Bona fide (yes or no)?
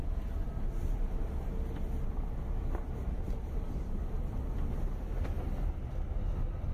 yes